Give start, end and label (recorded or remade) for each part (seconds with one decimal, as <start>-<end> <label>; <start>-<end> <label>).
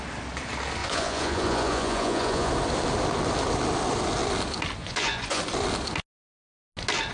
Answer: 0.0-0.8 recorded; 0.8-2.5 remade; 2.5-4.8 recorded; 4.8-5.4 remade; 5.4-7.1 recorded